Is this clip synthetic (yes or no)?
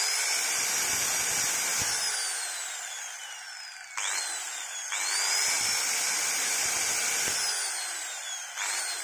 no